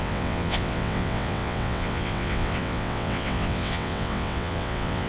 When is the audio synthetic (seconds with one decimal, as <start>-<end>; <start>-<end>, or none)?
0.0-5.1

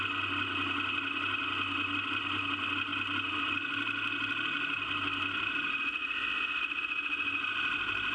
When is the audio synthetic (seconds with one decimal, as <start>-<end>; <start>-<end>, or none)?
none

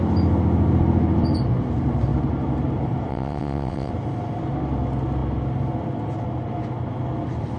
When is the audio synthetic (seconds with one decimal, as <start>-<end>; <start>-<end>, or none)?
3.1-3.9

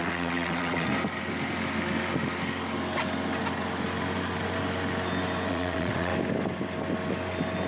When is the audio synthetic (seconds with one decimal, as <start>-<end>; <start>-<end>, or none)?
0.0-0.9; 5.5-6.1

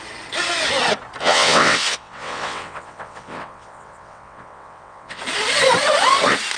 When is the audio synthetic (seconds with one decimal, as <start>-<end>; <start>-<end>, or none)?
1.2-5.2

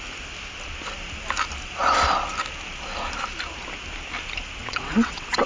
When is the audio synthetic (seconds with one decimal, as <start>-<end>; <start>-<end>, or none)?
4.6-5.5

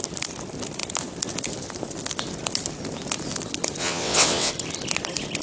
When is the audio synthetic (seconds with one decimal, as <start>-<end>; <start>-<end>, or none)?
3.8-4.5